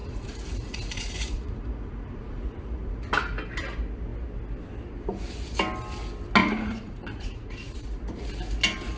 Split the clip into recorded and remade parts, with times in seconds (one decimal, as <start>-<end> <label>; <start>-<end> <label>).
0.0-3.0 remade; 3.0-6.4 recorded; 6.4-8.0 remade; 8.0-9.0 recorded